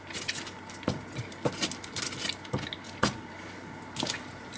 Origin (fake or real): real